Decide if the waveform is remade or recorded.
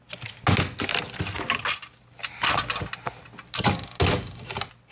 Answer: recorded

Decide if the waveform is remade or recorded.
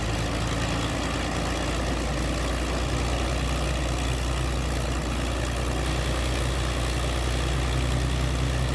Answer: recorded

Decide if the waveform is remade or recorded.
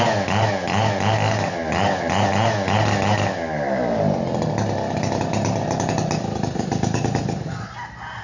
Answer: recorded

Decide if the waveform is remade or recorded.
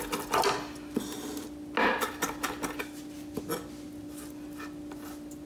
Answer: recorded